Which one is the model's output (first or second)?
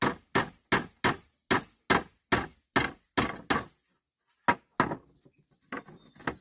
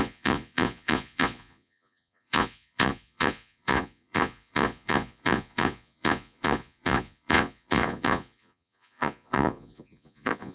second